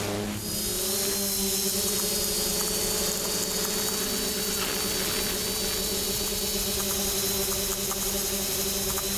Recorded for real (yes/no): yes